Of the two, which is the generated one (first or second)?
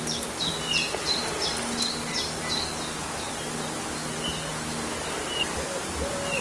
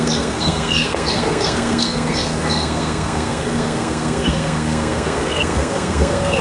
second